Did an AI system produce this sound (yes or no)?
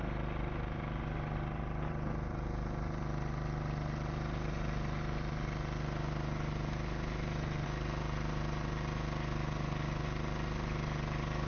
no